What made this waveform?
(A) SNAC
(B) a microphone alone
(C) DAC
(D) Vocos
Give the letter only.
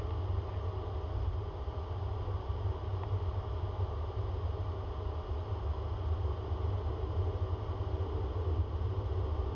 B